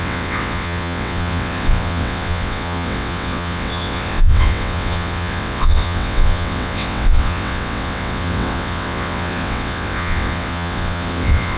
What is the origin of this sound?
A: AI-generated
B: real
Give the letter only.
A